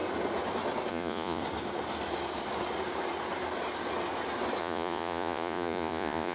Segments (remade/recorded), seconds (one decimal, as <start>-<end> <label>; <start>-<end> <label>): 0.0-0.9 recorded; 0.9-1.4 remade; 1.4-4.6 recorded; 4.6-6.3 remade